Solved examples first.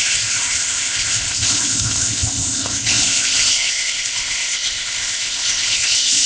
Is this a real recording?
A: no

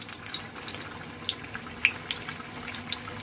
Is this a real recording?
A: yes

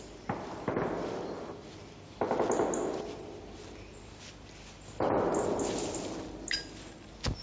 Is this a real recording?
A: yes